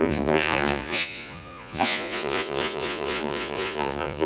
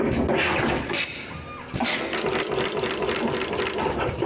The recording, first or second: second